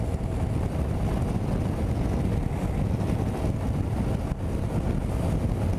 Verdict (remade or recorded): recorded